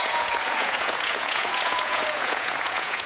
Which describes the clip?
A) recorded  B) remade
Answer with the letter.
B